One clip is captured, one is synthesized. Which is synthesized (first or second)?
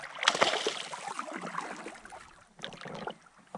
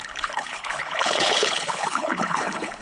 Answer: second